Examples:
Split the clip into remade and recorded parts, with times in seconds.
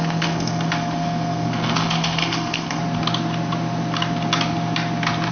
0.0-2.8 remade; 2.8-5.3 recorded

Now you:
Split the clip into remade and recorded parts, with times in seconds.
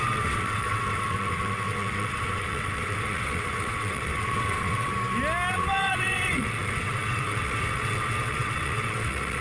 0.0-4.9 remade; 4.9-5.5 recorded; 5.5-9.4 remade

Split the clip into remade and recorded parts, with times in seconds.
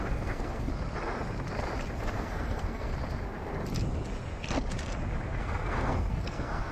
0.0-0.7 remade; 0.7-2.1 recorded; 2.1-2.9 remade; 2.9-5.4 recorded; 5.4-6.7 remade